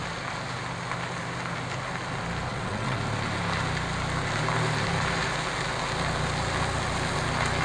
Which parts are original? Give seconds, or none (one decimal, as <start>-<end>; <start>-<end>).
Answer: 0.0-2.5; 3.0-7.6